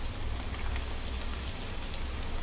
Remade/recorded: recorded